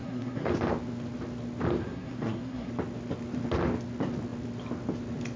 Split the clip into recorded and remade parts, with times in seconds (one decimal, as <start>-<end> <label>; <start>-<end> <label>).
0.0-0.5 remade; 0.5-1.8 recorded; 1.8-2.7 remade; 2.7-5.4 recorded